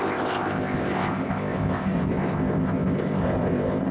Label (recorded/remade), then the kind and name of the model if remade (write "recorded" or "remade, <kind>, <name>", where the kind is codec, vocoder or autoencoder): remade, codec, ZipCodec